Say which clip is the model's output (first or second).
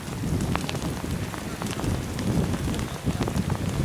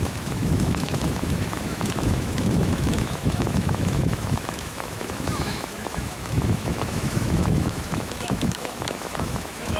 second